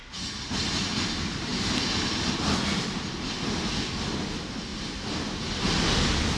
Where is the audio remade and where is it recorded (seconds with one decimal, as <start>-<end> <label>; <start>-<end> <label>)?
0.0-6.4 recorded